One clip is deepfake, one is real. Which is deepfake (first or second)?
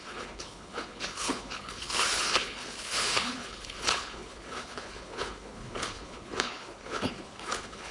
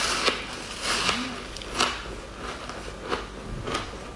first